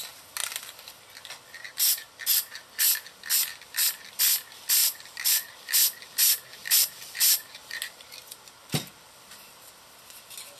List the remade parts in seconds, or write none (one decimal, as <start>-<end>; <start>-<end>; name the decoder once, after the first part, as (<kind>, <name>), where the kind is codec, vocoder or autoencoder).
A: 4.8-5.5 (vocoder, BigVGAN v2); 6.5-8.1; 8.6-9.7